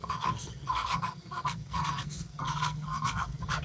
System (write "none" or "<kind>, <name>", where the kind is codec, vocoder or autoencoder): codec, SNAC